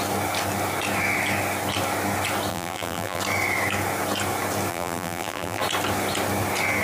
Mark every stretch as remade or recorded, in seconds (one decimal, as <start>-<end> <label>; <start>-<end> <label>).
0.0-2.5 recorded; 2.5-3.2 remade; 3.2-4.7 recorded; 4.7-5.6 remade; 5.6-6.8 recorded